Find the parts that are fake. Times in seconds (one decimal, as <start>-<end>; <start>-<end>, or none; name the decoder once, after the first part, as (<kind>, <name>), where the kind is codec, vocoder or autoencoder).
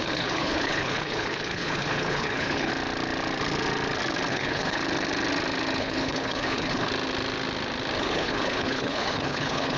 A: 0.0-2.7 (codec, HILCodec); 4.3-4.8; 5.8-6.9; 8.0-9.8